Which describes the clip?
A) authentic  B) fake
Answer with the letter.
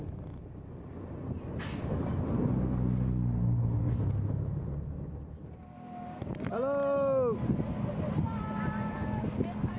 A